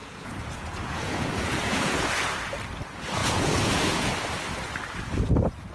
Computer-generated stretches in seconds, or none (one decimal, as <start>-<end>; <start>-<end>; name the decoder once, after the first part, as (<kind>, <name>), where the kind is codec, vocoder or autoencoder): 0.0-2.1 (vocoder, Vocos); 3.2-4.1